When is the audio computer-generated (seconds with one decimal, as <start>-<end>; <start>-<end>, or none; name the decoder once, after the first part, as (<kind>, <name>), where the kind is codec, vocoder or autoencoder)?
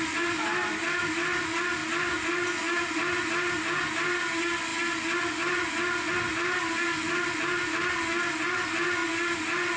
none